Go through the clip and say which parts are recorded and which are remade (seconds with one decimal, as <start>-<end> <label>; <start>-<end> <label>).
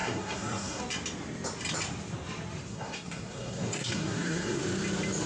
0.0-0.8 remade; 0.8-2.7 recorded; 2.7-4.6 remade; 4.6-5.3 recorded